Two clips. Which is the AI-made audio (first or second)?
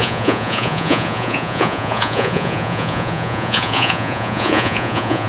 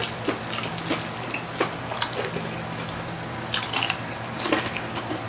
first